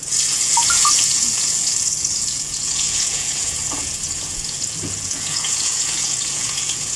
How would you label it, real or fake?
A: fake